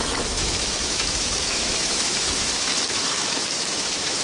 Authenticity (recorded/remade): remade